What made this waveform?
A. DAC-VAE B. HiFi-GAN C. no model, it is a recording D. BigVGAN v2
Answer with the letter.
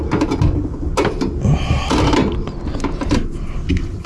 C